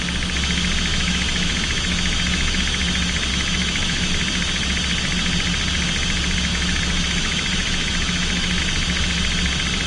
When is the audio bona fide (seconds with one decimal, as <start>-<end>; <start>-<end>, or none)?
0.0-0.9; 2.6-3.3; 4.1-6.5; 8.6-9.9